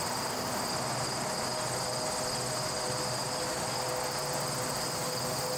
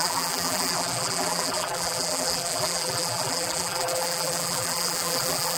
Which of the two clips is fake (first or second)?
second